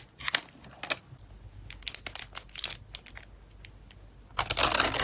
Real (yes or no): yes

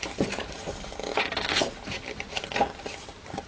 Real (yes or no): yes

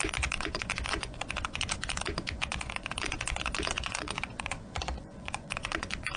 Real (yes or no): no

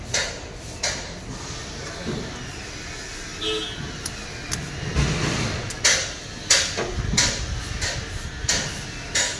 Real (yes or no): yes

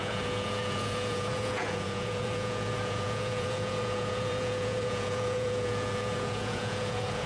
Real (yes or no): no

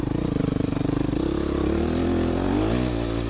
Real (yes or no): yes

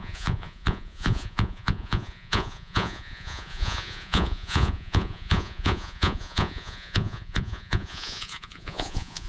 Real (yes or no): no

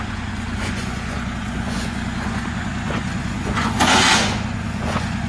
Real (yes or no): no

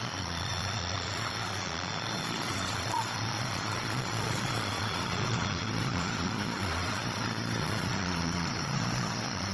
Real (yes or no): no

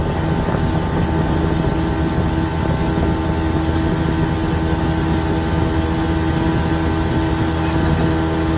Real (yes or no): yes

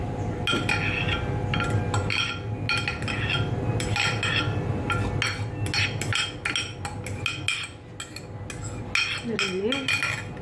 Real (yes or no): yes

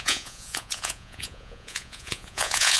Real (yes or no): no